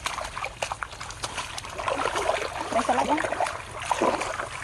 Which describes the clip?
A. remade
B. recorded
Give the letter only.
B